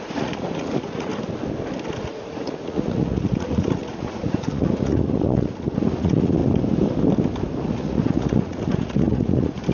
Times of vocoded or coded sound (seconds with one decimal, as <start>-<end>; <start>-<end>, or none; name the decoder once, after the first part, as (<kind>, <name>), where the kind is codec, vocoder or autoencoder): 0.0-1.1 (vocoder, Vocos); 2.0-6.4; 7.7-9.7